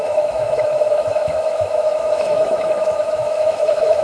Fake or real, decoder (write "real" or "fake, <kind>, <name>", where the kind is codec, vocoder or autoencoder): fake, autoencoder, DAC-VAE